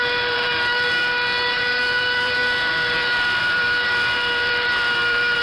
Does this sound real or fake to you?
fake